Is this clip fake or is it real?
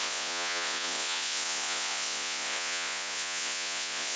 fake